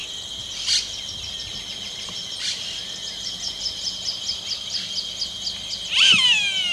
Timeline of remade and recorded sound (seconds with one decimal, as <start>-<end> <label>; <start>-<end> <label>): 0.0-6.7 recorded